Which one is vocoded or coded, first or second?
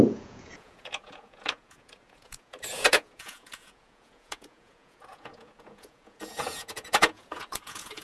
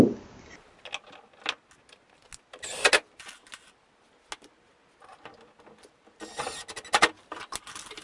first